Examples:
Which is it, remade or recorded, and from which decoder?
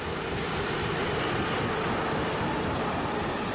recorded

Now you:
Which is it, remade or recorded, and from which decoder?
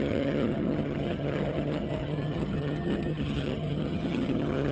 remade, vocoder, HiFi-GAN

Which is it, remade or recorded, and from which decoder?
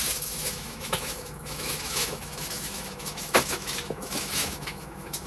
remade, autoencoder, DAC-VAE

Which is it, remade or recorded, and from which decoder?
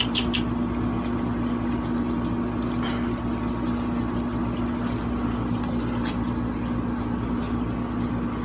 recorded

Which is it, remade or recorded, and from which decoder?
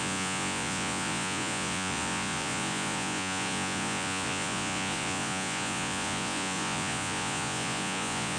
remade, vocoder, Vocos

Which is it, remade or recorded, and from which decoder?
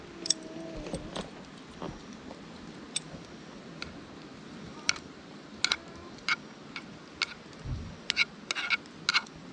recorded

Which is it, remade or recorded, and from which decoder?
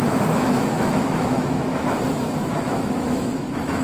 remade, autoencoder, DAC-VAE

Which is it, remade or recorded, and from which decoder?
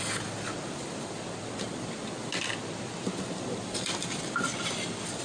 recorded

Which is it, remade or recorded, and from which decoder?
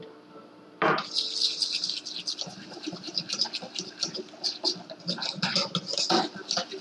recorded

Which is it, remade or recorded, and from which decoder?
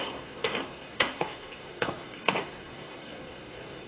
remade, codec, SNAC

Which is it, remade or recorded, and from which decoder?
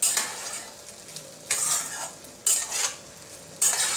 recorded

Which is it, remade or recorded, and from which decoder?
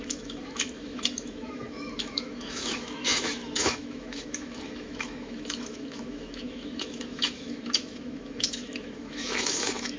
remade, autoencoder, DAC-VAE